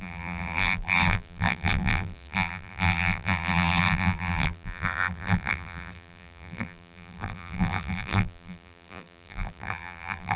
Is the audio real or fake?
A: fake